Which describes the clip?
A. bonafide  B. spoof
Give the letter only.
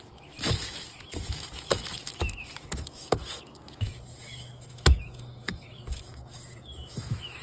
B